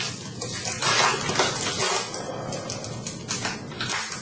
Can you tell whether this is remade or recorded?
recorded